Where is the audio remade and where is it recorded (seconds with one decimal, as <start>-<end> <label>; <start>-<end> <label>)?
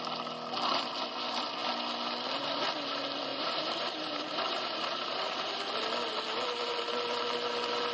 0.0-3.3 recorded; 3.3-5.5 remade; 5.5-7.9 recorded